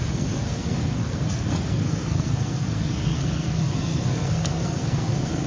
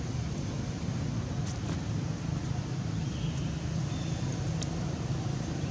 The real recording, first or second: second